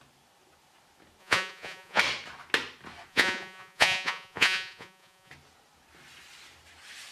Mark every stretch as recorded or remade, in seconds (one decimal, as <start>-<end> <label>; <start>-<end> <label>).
0.0-1.2 recorded; 1.2-2.0 remade; 2.0-3.1 recorded; 3.1-5.3 remade; 5.3-7.1 recorded